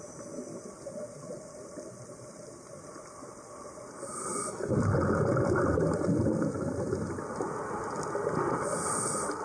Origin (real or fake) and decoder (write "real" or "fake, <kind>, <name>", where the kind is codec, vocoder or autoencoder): real